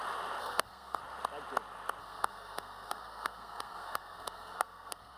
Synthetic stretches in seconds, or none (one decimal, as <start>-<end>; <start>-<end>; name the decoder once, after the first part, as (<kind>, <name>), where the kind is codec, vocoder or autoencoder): 0.4-1.0 (codec, SNAC); 2.0-5.2